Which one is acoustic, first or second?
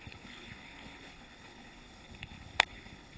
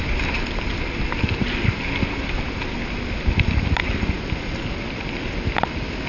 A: second